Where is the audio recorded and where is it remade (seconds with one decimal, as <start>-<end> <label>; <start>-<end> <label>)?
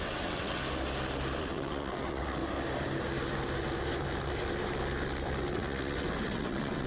0.0-0.6 remade; 0.6-1.4 recorded; 1.4-2.4 remade; 2.4-5.5 recorded; 5.5-6.9 remade